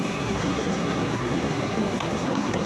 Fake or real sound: fake